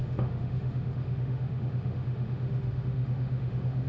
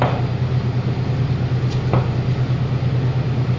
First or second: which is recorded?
second